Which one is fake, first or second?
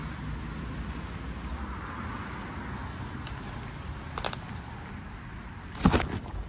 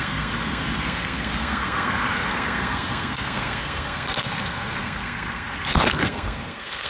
second